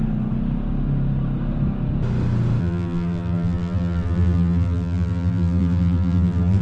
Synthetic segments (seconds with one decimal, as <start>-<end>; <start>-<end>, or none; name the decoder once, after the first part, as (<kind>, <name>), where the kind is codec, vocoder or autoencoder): 2.6-6.6 (vocoder, BigVGAN v2)